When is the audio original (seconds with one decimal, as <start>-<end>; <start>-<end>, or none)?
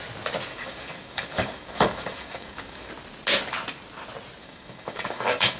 0.0-0.5; 2.9-4.4